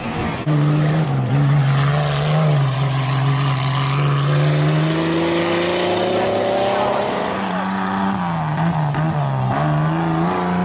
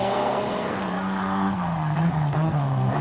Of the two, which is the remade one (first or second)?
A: second